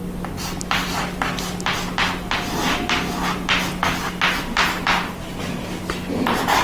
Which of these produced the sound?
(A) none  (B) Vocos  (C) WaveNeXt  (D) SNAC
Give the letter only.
A